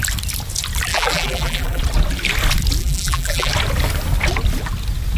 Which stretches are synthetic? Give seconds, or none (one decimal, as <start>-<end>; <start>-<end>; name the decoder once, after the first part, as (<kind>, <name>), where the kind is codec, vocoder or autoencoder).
0.9-1.8 (vocoder, BigVGAN v2); 2.8-3.5